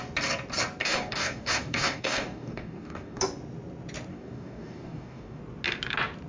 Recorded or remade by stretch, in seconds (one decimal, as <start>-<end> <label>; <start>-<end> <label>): 0.0-0.8 recorded; 0.8-3.2 remade; 3.2-4.1 recorded; 4.1-5.4 remade; 5.4-6.3 recorded